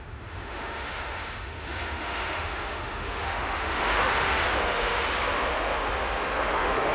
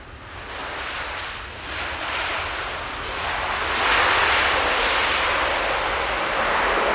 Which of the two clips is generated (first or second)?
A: first